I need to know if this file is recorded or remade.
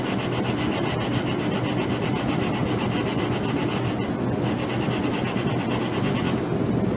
recorded